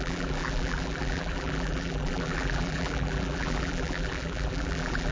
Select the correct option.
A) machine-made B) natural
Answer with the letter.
A